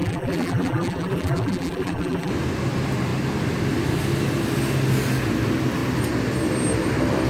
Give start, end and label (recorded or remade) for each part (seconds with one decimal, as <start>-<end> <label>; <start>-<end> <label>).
0.0-2.3 remade; 2.3-7.3 recorded